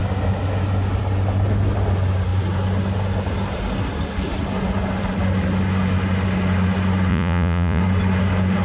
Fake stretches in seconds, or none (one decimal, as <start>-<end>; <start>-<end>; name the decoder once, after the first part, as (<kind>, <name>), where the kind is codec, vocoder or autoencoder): 7.1-7.8 (vocoder, Vocos)